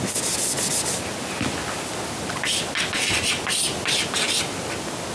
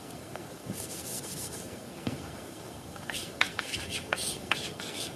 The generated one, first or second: second